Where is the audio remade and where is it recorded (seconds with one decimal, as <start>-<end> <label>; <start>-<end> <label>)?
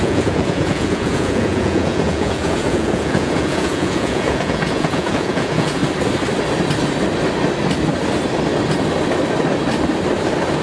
0.0-5.8 remade; 5.8-10.6 recorded